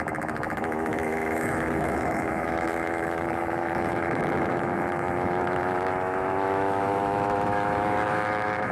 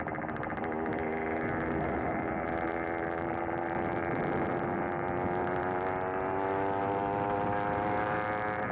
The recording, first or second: second